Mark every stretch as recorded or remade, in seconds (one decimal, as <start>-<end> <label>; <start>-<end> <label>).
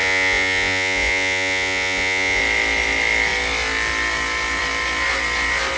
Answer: 0.0-2.4 remade; 2.4-5.8 recorded